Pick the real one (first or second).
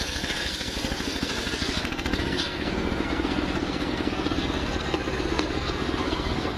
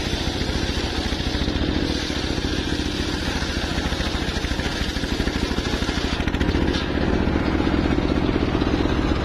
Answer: second